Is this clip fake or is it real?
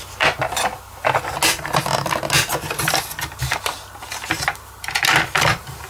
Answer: real